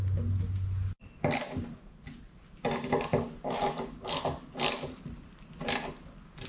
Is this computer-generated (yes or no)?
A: no